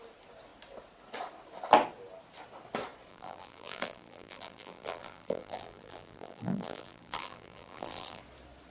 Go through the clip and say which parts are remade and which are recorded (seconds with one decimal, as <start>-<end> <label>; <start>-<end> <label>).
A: 0.0-3.1 recorded; 3.1-8.2 remade; 8.2-8.7 recorded